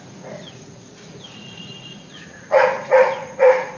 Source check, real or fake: fake